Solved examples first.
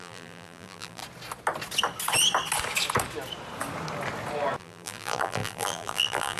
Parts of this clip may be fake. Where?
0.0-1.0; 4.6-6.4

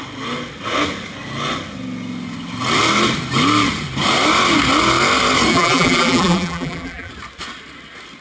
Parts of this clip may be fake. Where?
5.5-7.1

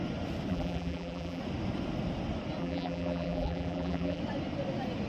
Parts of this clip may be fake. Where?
0.5-1.4; 2.6-4.2

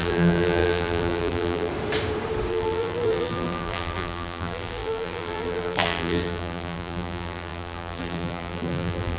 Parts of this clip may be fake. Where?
0.0-1.7; 2.5-9.2

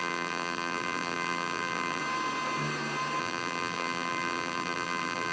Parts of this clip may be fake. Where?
0.0-2.0; 3.2-5.3

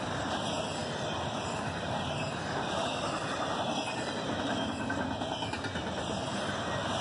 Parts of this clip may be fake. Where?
0.8-4.4